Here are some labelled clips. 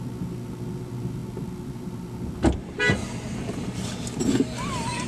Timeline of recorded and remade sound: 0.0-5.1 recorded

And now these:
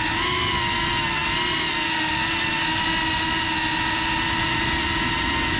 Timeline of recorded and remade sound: 0.0-5.6 recorded

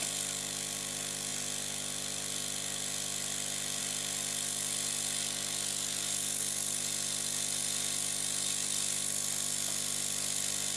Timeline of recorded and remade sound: 0.0-10.8 recorded

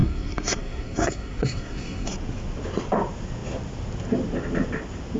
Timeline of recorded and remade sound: 0.0-2.1 remade; 2.1-5.2 recorded

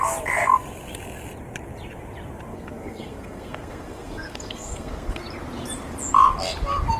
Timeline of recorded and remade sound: 0.0-2.5 recorded; 2.5-5.2 remade; 5.2-7.0 recorded